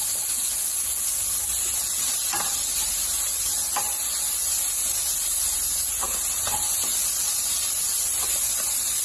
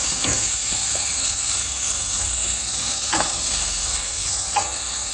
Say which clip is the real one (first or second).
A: first